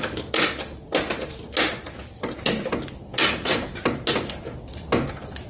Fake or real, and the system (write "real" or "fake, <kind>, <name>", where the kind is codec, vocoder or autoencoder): real